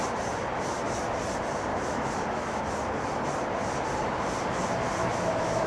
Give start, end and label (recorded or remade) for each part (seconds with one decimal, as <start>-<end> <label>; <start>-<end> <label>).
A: 0.0-1.7 recorded; 1.7-2.6 remade; 2.6-5.0 recorded; 5.0-5.7 remade